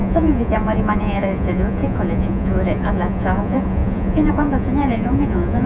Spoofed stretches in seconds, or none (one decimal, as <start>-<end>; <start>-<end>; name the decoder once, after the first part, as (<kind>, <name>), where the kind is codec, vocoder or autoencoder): 0.0-5.7 (vocoder, Vocos)